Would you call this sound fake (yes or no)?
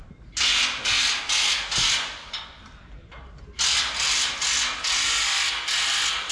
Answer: no